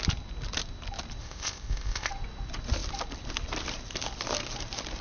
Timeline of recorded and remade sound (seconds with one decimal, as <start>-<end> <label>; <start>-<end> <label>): 0.0-1.2 recorded; 1.2-2.1 remade; 2.1-5.0 recorded